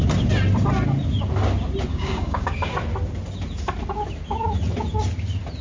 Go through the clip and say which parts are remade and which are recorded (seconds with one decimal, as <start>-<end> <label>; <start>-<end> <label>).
0.0-1.9 recorded; 1.9-2.7 remade; 2.7-5.6 recorded